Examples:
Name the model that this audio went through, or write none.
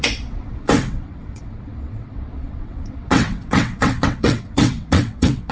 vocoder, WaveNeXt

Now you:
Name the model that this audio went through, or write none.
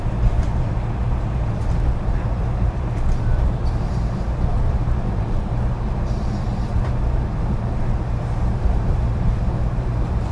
vocoder, BigVGAN v2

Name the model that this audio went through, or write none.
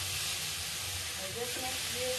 none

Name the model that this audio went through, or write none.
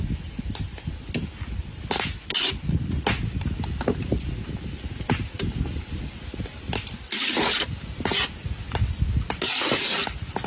none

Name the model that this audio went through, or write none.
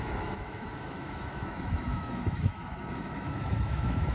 autoencoder, DAC-VAE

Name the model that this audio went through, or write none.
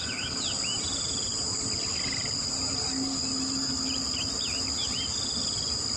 none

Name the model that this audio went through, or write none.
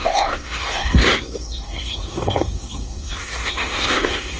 codec, SNAC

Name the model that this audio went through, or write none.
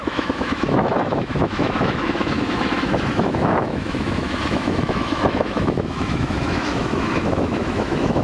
autoencoder, DAC-VAE